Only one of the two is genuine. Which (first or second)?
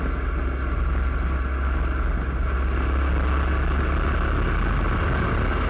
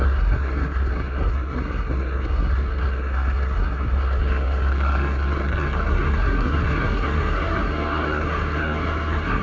first